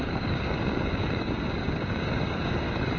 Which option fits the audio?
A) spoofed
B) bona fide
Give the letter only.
A